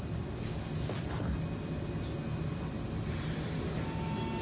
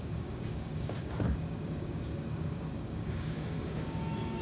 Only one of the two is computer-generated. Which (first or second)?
second